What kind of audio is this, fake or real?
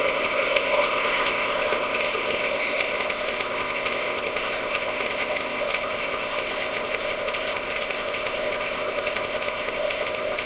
fake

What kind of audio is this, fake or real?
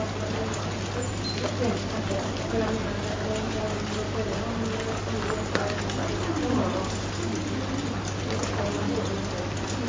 real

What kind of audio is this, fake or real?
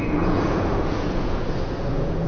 fake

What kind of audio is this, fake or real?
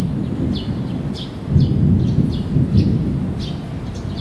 real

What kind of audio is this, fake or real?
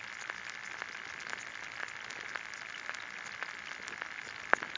real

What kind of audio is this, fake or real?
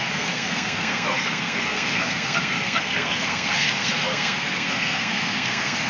fake